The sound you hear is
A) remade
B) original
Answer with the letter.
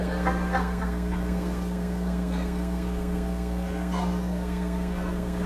A